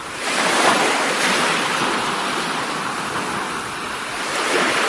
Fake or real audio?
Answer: real